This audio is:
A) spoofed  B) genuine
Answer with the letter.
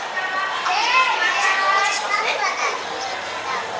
B